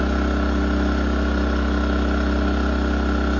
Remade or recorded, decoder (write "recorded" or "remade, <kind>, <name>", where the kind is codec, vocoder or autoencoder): recorded